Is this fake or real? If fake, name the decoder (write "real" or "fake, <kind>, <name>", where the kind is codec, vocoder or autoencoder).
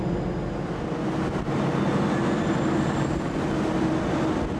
real